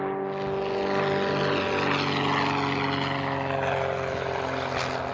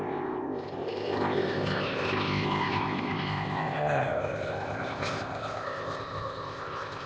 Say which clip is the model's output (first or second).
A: second